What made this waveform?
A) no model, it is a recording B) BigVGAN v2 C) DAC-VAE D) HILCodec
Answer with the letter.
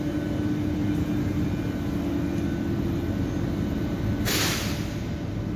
A